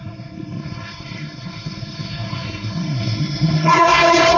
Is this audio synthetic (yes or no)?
yes